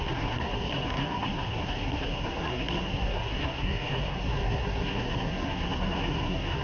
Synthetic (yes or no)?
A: yes